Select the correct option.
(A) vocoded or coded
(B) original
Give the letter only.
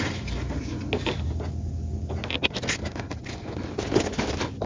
B